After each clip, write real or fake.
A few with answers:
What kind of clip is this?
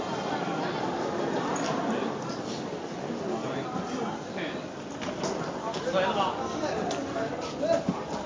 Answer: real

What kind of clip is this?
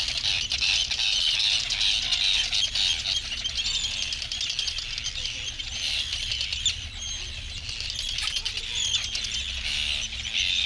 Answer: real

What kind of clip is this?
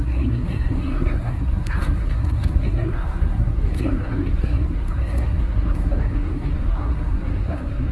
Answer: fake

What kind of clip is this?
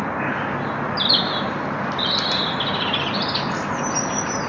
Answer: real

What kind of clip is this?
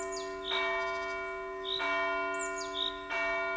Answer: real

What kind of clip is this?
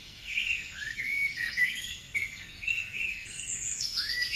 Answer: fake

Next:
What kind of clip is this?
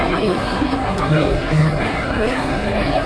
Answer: fake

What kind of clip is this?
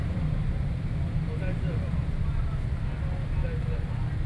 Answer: real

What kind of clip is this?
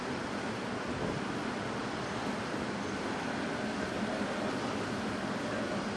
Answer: real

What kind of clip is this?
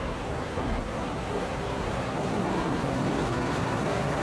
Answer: fake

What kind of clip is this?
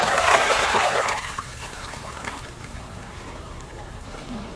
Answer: fake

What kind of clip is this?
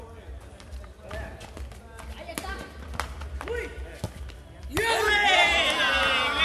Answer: real